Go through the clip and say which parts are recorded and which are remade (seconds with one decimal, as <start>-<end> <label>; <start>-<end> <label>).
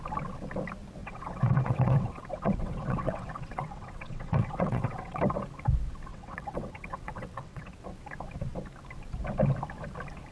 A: 0.0-1.0 recorded; 1.0-5.2 remade; 5.2-6.1 recorded; 6.1-7.7 remade; 7.7-10.3 recorded